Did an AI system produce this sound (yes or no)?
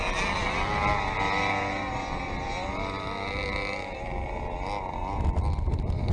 no